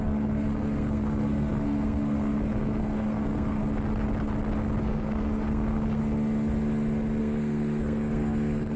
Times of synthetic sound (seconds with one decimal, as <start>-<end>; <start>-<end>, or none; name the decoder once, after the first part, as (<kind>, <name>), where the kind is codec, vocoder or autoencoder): 0.0-3.6 (codec, SNAC); 4.8-6.0; 7.2-8.8